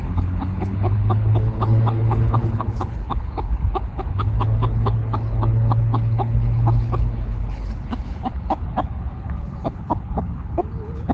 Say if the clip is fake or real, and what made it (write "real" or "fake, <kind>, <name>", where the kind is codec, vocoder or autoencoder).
fake, codec, HILCodec